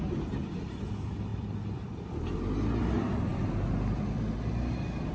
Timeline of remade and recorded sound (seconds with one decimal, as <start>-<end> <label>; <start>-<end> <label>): 0.0-1.3 recorded; 1.3-2.1 remade; 2.1-5.1 recorded